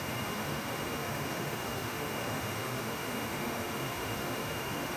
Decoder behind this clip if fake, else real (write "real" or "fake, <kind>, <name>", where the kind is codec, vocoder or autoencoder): fake, autoencoder, DAC-VAE